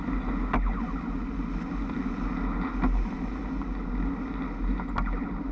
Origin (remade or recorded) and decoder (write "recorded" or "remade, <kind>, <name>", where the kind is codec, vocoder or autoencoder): recorded